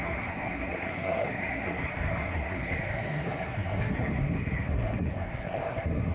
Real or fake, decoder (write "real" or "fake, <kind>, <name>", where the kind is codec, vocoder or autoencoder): fake, codec, SNAC